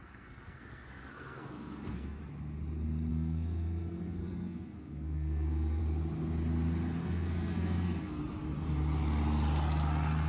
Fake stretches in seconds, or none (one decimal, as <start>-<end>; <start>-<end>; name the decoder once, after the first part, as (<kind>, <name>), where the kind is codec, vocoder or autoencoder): 0.0-2.2 (codec, SNAC); 3.1-5.8; 7.0-8.2